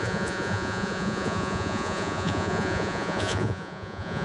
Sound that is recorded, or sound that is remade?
remade